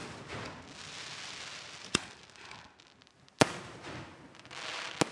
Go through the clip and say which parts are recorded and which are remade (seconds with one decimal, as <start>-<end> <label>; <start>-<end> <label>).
0.0-5.1 recorded